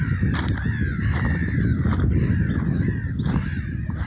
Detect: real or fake real